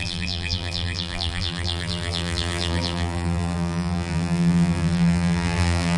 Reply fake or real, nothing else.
fake